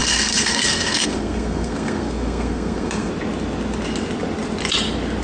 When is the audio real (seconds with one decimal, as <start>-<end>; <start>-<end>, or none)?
3.1-5.2